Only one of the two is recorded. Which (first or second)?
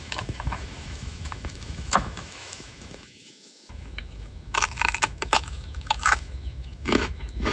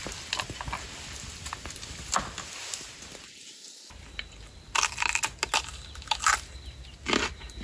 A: second